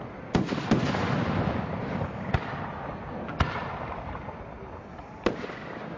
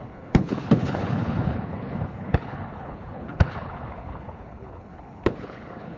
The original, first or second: first